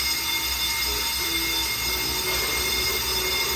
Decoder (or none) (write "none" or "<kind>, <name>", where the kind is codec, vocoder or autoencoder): none